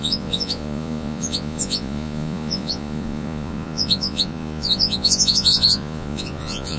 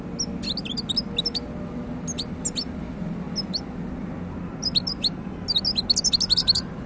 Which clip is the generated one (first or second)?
first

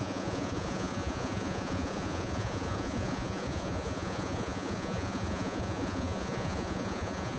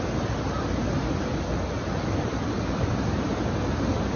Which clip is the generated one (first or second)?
first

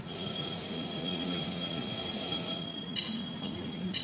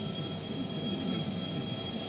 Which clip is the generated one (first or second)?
first